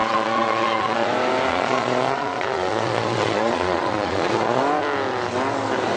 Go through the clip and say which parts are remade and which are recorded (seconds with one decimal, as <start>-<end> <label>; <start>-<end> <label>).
0.0-1.1 remade; 1.1-1.5 recorded; 1.5-4.6 remade; 4.6-6.0 recorded